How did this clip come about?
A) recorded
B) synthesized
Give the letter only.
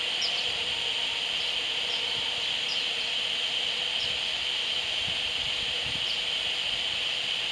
A